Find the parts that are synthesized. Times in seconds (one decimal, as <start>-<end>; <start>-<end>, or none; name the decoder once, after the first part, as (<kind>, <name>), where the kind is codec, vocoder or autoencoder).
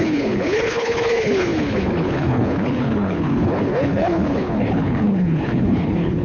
0.0-6.2 (codec, HILCodec)